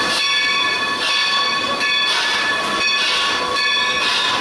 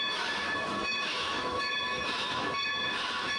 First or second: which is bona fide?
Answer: first